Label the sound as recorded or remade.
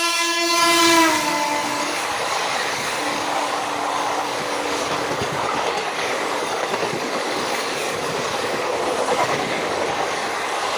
remade